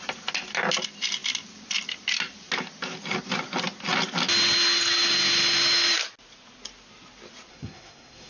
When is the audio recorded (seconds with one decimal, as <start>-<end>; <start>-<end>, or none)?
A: 0.0-7.5